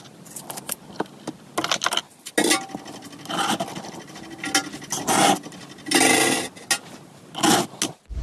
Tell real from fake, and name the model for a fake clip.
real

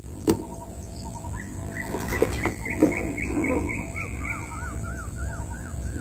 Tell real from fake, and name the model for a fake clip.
fake, vocoder, BigVGAN v2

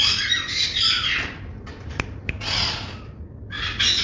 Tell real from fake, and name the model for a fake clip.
real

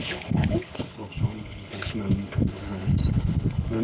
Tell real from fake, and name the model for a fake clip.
fake, codec, HILCodec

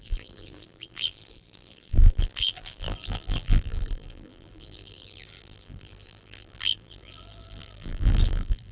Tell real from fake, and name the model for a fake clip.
fake, vocoder, BigVGAN v2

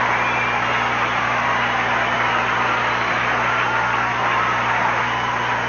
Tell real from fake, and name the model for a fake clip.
real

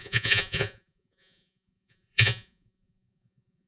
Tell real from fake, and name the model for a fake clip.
fake, vocoder, Vocos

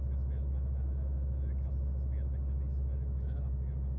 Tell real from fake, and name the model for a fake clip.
real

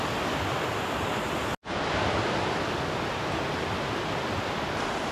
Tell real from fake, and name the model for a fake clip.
real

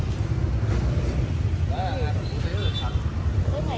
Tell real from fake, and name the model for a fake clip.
real